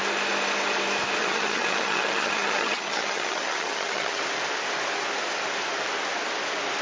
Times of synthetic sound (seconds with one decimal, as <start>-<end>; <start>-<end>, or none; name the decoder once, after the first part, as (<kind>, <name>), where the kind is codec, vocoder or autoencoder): 1.2-4.2 (vocoder, HiFi-GAN)